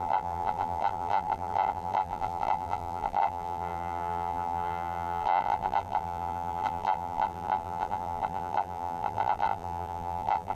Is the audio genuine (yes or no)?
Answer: no